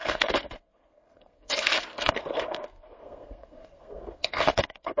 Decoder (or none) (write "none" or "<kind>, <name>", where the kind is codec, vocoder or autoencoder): codec, SNAC